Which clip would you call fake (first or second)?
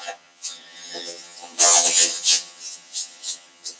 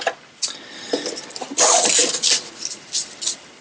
first